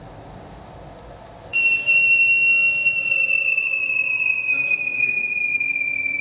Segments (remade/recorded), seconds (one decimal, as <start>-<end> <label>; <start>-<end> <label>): 0.0-1.5 recorded; 1.5-2.3 remade; 2.3-3.5 recorded; 3.5-6.2 remade